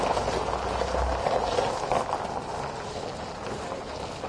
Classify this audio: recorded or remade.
recorded